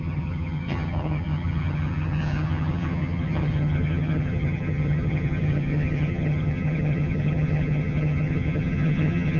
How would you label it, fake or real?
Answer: fake